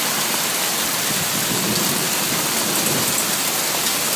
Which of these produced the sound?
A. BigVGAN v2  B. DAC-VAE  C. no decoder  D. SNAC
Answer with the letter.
C